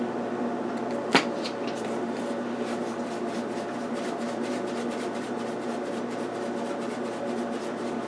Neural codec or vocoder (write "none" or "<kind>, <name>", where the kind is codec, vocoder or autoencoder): none